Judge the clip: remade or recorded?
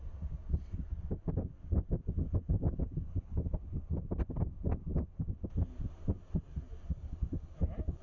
recorded